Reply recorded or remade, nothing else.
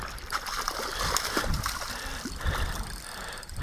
recorded